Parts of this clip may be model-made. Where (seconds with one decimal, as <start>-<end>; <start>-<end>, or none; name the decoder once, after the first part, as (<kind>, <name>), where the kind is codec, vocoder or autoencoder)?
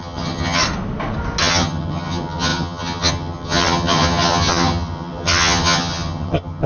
0.0-0.6 (vocoder, HiFi-GAN); 1.4-6.7